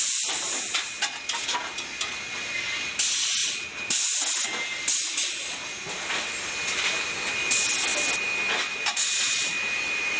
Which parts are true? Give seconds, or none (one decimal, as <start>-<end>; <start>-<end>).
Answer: 0.0-10.2

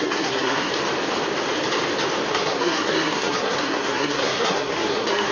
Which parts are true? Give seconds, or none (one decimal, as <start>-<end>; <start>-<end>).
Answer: 0.7-2.3

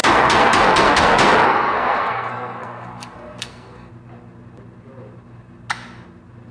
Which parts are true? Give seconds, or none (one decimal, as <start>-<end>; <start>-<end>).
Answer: 3.9-6.5

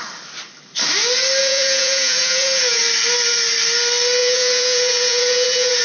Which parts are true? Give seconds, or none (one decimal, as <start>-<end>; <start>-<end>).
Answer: 0.0-1.4; 2.8-4.2

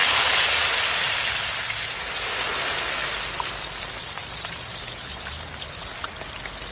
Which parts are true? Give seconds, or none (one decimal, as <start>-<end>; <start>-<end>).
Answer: 1.5-4.2; 6.1-6.7

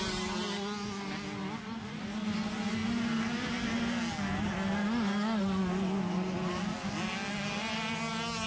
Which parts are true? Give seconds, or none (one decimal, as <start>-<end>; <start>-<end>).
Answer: 0.0-8.5

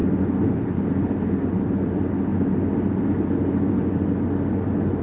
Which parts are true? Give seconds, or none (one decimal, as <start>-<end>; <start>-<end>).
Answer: 0.0-5.0

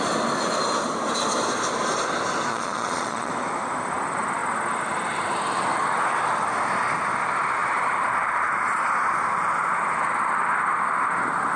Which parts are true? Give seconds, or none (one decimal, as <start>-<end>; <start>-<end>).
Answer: 0.0-2.5; 3.3-11.6